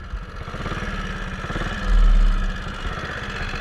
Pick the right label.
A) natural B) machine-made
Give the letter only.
A